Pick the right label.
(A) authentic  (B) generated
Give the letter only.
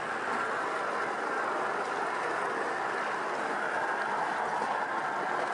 A